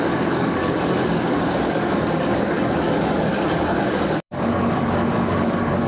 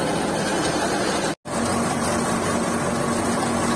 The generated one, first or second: first